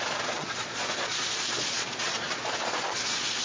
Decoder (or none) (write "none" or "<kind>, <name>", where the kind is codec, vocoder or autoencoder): vocoder, Vocos